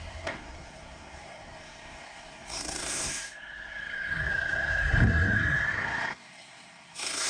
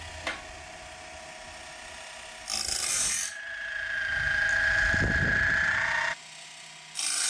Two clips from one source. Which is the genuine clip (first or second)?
second